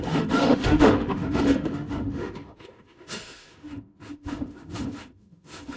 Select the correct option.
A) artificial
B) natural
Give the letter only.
A